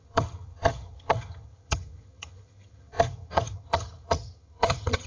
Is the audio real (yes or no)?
no